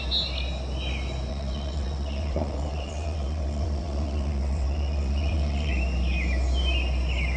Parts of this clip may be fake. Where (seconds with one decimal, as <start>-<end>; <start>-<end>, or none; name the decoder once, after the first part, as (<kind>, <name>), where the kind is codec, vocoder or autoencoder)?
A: 1.3-5.7 (vocoder, WaveNeXt)